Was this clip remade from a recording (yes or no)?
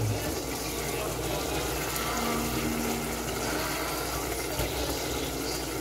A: no